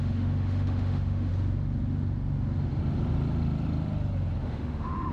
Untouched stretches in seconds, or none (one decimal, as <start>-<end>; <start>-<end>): 1.3-4.4